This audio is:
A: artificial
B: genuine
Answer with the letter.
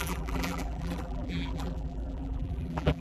A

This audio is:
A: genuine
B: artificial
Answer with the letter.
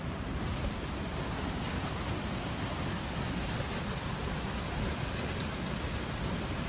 A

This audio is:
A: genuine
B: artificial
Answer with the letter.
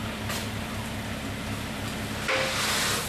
A